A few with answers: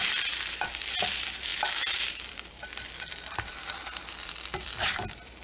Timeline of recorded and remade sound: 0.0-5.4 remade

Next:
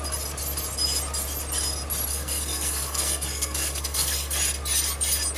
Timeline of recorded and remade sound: 0.0-2.1 recorded; 2.1-4.4 remade; 4.4-5.4 recorded

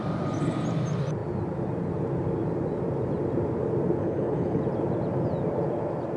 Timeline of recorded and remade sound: 0.0-4.0 recorded; 4.0-4.6 remade; 4.6-6.2 recorded

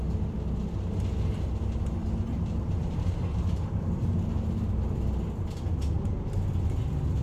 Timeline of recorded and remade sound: 0.0-2.0 recorded; 2.0-4.7 remade; 4.7-7.2 recorded